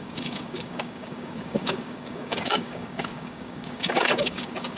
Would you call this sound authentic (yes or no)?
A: no